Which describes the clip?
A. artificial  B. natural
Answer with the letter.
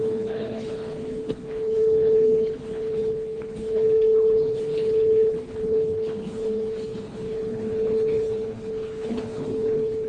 A